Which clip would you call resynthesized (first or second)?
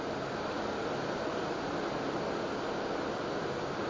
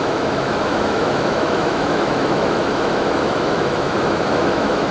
second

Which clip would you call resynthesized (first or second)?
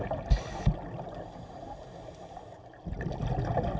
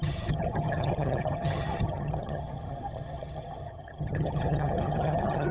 second